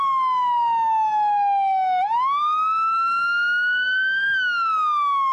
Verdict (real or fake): real